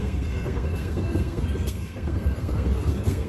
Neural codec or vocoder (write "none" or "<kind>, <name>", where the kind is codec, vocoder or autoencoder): codec, SNAC